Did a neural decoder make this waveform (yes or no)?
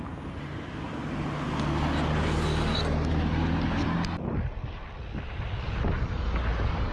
no